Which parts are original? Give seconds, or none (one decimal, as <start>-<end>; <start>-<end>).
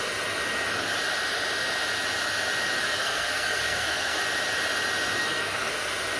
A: 0.0-2.8; 4.2-5.2; 5.7-6.2